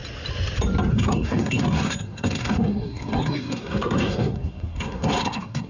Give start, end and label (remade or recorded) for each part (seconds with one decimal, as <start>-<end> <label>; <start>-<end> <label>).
0.0-0.9 recorded; 0.9-5.7 remade